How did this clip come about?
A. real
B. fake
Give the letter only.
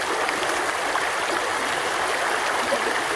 A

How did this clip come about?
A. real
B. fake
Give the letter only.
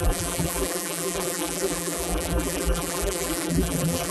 B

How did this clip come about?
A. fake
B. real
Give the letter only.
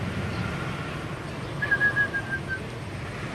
B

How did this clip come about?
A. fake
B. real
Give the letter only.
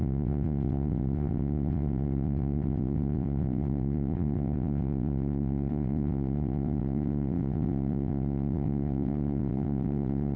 A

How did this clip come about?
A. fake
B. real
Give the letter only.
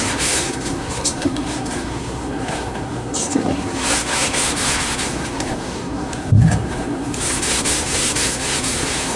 A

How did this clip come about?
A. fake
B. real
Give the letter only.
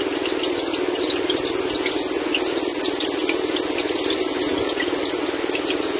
B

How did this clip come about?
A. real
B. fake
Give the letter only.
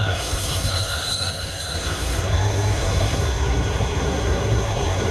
B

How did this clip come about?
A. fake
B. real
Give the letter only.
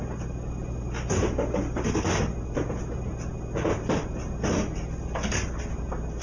B